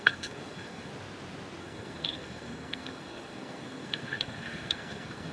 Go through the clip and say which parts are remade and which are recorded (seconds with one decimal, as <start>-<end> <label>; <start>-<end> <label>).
0.0-0.9 remade; 0.9-1.6 recorded; 1.6-5.3 remade